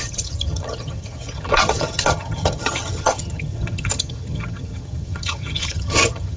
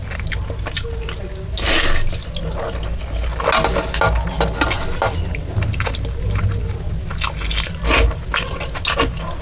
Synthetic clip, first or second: first